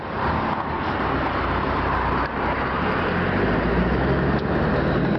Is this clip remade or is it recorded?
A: recorded